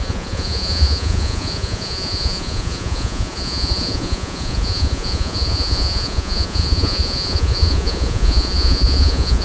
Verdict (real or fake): fake